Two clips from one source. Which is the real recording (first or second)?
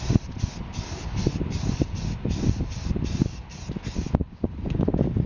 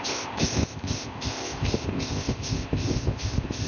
first